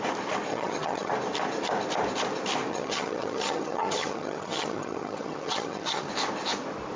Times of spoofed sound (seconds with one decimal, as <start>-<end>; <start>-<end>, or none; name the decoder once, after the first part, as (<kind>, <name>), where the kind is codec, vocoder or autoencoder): 0.5-1.1 (vocoder, HiFi-GAN); 2.7-6.1